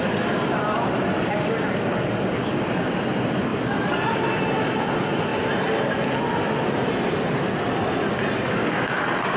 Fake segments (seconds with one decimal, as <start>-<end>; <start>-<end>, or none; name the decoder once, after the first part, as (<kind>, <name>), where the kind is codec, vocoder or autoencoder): none